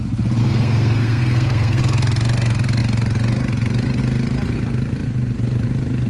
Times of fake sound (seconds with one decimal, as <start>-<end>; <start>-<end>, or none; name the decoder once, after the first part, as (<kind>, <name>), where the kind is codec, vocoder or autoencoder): 0.4-1.8 (codec, SNAC)